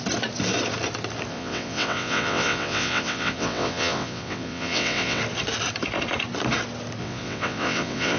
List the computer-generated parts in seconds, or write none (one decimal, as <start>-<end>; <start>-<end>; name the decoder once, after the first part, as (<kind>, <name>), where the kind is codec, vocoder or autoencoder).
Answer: 1.3-5.2 (vocoder, WaveNeXt); 7.0-8.2